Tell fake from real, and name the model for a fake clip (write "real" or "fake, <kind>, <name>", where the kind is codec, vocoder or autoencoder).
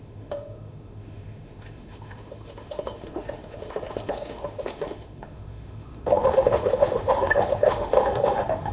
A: fake, autoencoder, DAC-VAE